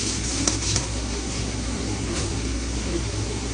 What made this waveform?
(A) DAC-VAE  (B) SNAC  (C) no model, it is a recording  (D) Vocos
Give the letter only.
B